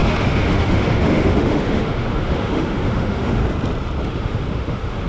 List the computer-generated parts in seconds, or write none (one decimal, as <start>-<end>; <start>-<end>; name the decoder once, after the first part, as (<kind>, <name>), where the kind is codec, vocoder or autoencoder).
0.0-3.4 (autoencoder, DAC-VAE); 4.0-5.1

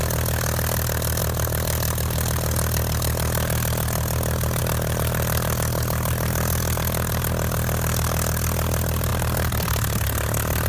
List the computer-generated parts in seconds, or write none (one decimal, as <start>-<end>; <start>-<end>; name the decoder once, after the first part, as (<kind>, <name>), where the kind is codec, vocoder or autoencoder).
none

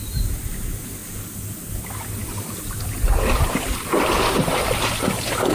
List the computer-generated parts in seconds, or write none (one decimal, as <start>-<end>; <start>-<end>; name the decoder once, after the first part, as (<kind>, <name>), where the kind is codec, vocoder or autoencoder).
none

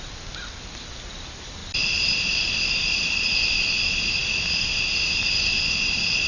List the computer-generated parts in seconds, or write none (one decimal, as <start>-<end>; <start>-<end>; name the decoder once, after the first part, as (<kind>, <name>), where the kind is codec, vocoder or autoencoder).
none

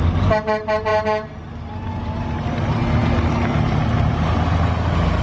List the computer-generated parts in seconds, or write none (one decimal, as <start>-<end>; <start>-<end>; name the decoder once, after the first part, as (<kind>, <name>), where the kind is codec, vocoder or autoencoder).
none

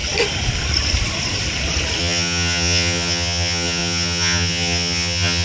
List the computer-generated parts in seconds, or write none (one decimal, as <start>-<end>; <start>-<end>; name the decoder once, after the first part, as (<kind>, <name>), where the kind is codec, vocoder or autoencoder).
2.0-5.4 (vocoder, HiFi-GAN)

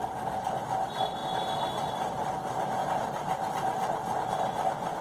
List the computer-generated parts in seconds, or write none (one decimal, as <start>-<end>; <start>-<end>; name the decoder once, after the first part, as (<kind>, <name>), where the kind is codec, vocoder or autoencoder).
none